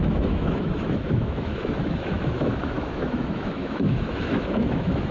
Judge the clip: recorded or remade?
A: remade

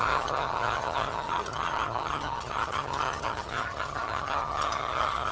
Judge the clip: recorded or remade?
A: remade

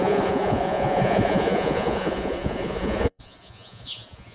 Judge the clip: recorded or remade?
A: remade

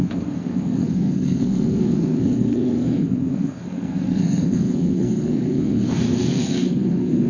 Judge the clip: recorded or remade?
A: remade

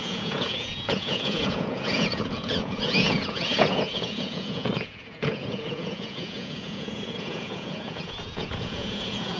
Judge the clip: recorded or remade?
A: remade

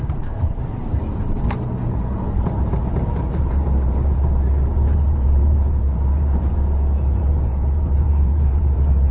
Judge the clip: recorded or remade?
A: remade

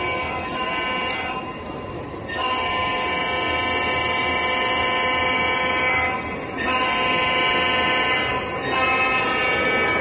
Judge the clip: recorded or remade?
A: recorded